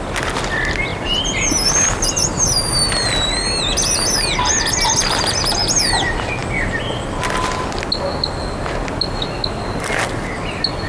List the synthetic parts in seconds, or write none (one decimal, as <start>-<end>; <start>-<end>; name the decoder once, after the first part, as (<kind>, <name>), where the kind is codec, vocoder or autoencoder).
none